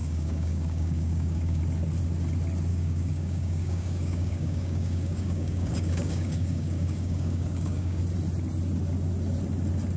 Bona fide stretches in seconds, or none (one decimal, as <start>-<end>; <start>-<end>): 1.6-2.7; 8.0-10.0